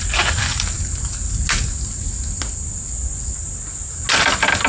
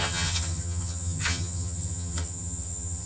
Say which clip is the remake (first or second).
second